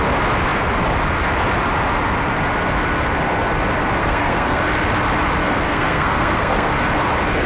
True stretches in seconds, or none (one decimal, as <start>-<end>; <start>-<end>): 0.0-4.0; 4.6-5.4; 6.7-7.5